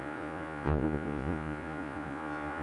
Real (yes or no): no